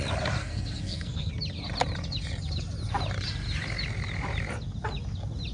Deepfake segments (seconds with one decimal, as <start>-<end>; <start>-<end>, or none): 0.4-1.3

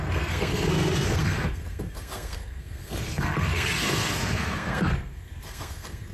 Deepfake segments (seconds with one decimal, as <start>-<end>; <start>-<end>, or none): 0.0-6.1

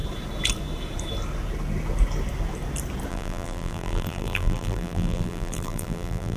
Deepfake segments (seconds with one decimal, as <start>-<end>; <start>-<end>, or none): 3.1-6.4

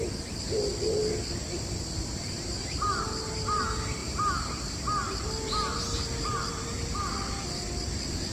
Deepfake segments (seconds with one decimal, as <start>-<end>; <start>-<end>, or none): none